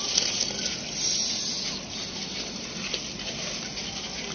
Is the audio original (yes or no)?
yes